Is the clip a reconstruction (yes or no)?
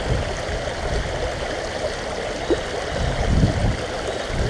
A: no